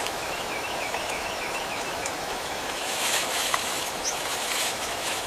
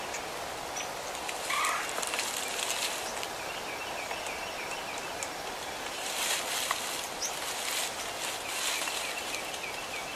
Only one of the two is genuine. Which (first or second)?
second